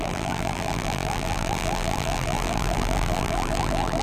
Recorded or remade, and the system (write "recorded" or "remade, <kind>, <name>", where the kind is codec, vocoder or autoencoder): remade, vocoder, BigVGAN v2